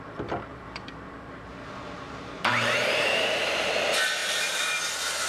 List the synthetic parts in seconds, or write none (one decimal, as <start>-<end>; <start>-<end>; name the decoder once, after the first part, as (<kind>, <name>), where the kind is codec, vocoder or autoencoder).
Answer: 0.5-3.7 (vocoder, BigVGAN v2); 4.2-4.8